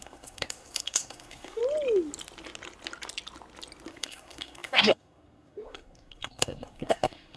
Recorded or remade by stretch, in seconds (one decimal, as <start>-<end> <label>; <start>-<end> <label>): 0.0-1.6 remade; 1.6-3.9 recorded; 3.9-7.4 remade